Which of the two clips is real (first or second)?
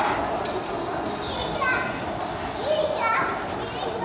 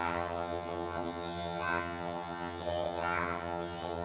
first